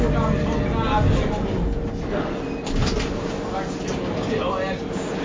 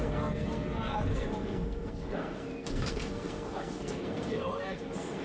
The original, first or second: first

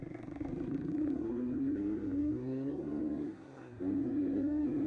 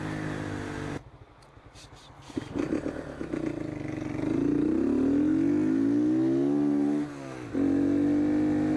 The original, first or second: second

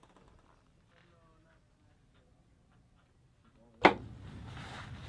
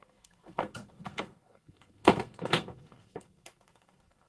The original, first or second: first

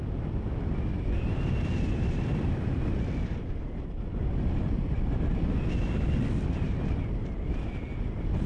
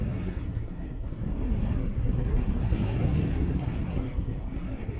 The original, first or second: first